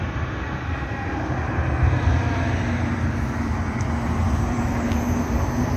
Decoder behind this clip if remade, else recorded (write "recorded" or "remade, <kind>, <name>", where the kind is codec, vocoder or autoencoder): recorded